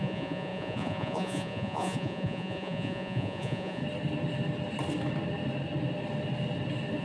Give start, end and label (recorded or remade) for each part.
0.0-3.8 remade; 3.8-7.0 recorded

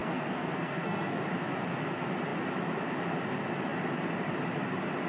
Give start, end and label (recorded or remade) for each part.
0.0-1.2 remade; 1.2-5.1 recorded

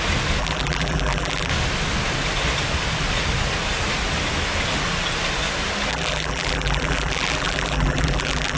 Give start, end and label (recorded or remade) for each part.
0.0-0.4 recorded; 0.4-1.5 remade; 1.5-5.9 recorded; 5.9-8.6 remade

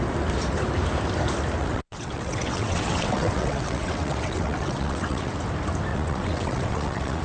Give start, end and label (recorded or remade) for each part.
0.0-1.6 recorded; 1.6-5.3 remade; 5.3-5.9 recorded; 5.9-7.2 remade

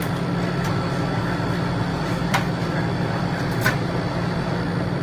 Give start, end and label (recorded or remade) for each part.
0.0-1.9 recorded; 1.9-2.5 remade; 2.5-5.0 recorded

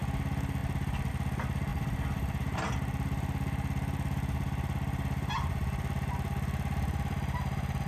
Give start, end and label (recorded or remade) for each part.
0.0-7.9 recorded

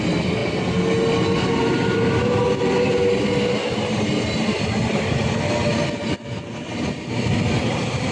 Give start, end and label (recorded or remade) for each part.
0.0-8.1 recorded